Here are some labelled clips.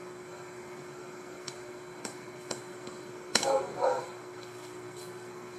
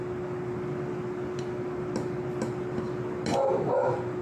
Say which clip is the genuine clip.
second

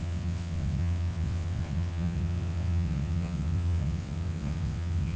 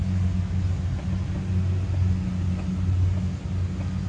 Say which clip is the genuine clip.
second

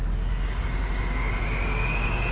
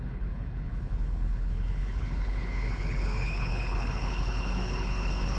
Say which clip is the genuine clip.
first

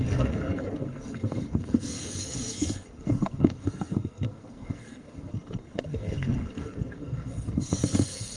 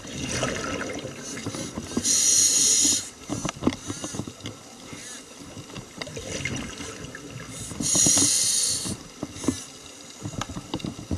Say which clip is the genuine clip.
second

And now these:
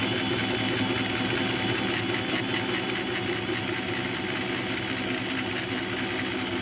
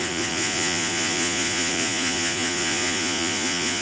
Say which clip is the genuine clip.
first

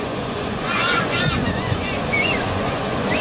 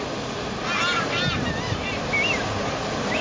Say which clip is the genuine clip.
second